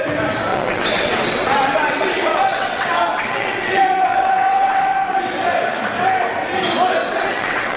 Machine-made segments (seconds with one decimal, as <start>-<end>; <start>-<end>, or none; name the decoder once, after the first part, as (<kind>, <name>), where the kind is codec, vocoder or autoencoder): 0.5-5.2 (vocoder, WaveNeXt); 7.0-7.8